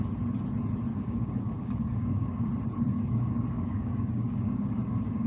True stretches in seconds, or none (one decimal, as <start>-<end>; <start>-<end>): 0.0-0.9; 2.5-2.9